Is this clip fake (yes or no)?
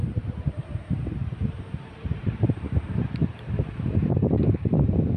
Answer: yes